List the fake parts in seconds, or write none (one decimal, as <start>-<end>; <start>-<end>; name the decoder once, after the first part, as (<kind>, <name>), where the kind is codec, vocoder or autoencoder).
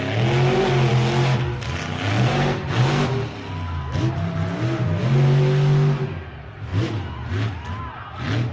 2.1-3.0 (codec, SNAC)